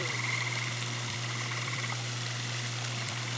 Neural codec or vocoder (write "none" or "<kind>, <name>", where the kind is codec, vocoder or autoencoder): vocoder, BigVGAN v2